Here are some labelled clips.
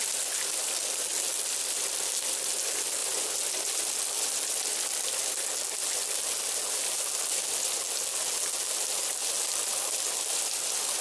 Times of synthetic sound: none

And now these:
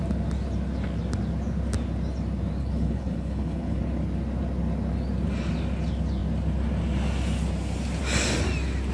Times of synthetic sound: 2.6-3.8

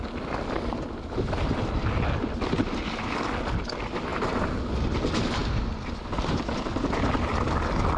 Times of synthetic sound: 4.1-4.7

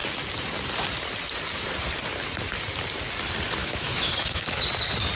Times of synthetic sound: 3.6-4.6

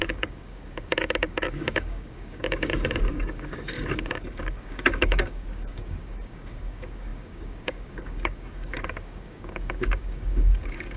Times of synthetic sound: 0.0-11.0

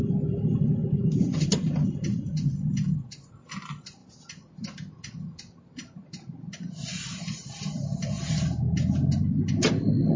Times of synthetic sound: 0.8-2.3

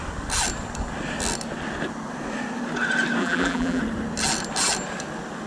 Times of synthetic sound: 3.2-3.8

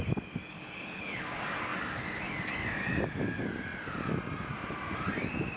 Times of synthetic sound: 0.5-1.2